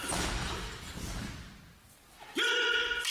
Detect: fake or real real